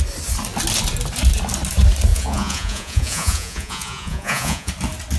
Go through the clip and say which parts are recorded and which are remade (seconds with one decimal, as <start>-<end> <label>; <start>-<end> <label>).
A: 0.0-2.1 recorded; 2.1-4.7 remade; 4.7-5.2 recorded